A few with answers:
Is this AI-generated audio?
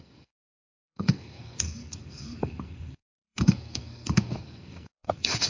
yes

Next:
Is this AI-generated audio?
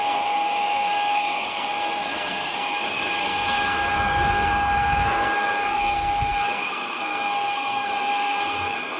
yes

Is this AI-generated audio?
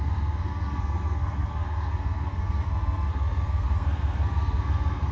yes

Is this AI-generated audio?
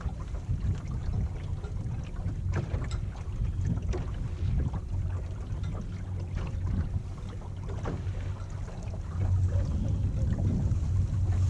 no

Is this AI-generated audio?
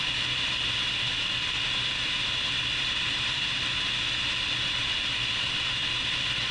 no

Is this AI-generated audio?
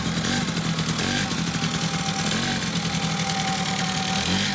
no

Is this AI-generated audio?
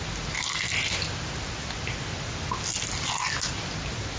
no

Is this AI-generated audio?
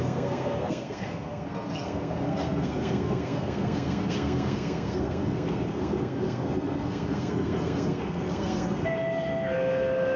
yes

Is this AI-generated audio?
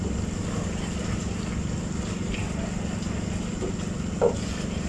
no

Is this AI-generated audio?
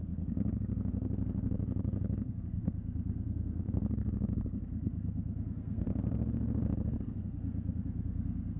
yes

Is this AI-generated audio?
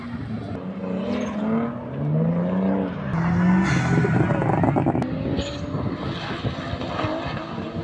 no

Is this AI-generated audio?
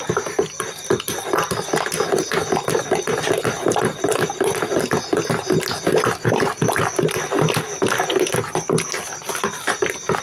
no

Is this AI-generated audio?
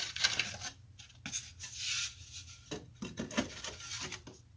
no